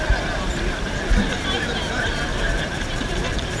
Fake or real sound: real